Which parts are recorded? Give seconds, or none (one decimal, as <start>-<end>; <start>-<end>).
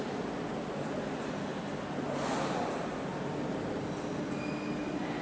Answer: 0.0-5.2